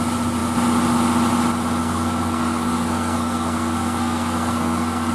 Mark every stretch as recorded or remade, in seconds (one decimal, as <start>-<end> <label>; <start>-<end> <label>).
0.0-1.8 recorded; 1.8-5.1 remade